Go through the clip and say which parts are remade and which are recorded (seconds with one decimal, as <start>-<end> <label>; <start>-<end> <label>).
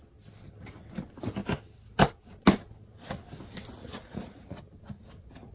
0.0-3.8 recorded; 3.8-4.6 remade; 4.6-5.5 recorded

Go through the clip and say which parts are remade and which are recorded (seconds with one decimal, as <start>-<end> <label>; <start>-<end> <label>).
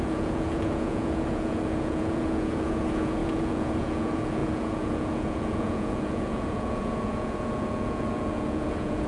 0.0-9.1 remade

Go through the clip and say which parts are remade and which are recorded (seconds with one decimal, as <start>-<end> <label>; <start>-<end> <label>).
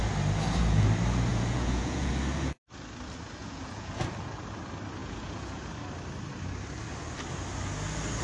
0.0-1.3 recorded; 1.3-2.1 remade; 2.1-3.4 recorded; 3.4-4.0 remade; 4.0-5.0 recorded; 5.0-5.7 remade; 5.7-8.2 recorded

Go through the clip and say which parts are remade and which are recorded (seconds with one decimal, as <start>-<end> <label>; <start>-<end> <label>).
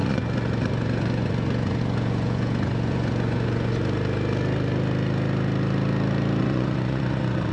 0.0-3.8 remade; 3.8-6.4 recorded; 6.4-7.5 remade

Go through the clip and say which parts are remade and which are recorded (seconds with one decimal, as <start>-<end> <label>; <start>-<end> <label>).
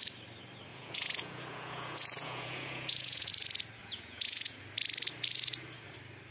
0.0-0.7 recorded; 0.7-3.3 remade; 3.3-3.8 recorded; 3.8-4.6 remade; 4.6-6.3 recorded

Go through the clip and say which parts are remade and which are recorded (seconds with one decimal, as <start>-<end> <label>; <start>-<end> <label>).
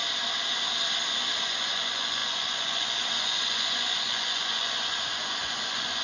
0.0-1.4 recorded; 1.4-6.0 remade